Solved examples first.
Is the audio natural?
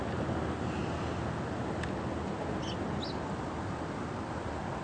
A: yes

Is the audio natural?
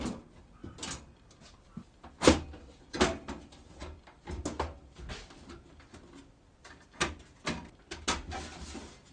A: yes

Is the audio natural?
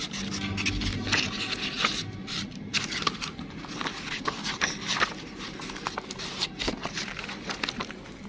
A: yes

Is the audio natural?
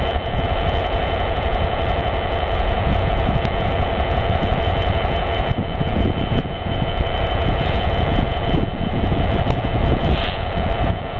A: no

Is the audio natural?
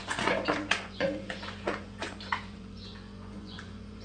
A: no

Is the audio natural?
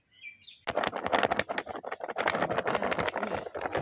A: yes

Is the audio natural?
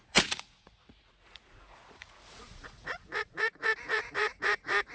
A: no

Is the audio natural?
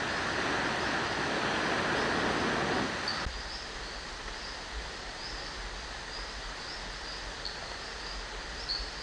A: yes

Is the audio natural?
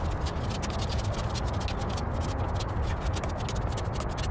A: yes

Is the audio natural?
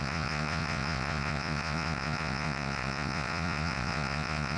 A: no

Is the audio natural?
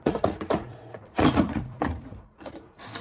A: no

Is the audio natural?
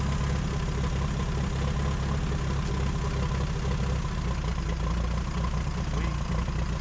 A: yes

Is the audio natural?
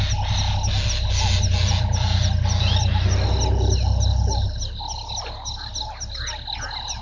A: yes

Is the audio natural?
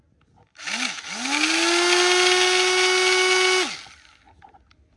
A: yes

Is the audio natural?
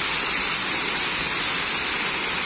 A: yes